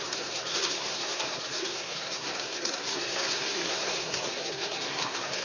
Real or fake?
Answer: fake